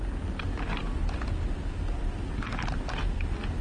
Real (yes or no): yes